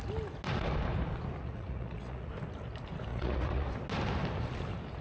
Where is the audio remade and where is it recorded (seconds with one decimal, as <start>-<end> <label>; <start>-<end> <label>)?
0.0-1.4 recorded; 1.4-2.3 remade; 2.3-3.1 recorded; 3.1-3.7 remade; 3.7-5.0 recorded